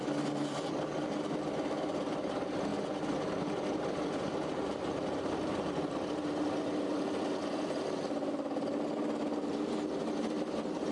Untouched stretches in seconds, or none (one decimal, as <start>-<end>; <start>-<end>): 0.0-10.9